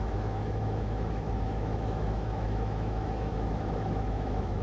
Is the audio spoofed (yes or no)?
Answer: yes